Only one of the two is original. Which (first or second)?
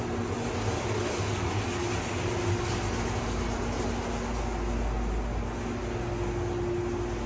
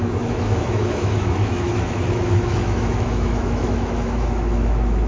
first